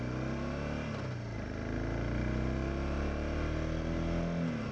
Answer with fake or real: real